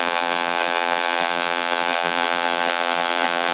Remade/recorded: remade